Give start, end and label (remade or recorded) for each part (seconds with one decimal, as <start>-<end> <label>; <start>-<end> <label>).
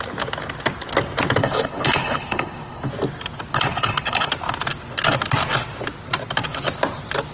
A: 0.0-1.4 recorded; 1.4-2.9 remade; 2.9-3.5 recorded; 3.5-4.3 remade; 4.3-7.3 recorded